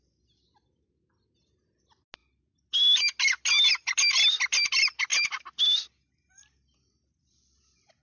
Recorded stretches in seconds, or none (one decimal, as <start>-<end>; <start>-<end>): 0.0-8.0